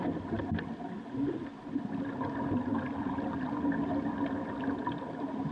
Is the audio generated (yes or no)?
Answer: no